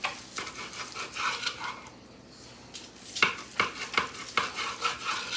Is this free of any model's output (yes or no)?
yes